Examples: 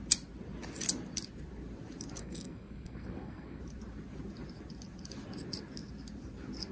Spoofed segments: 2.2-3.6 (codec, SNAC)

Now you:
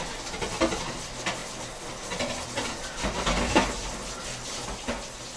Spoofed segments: none

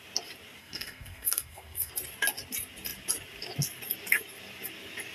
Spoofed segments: 0.6-1.9 (codec, SNAC)

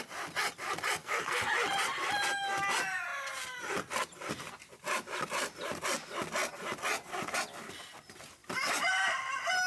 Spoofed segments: 1.0-1.5 (codec, SNAC)

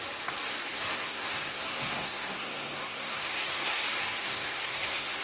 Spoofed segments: 0.7-3.8 (codec, SNAC); 4.2-5.2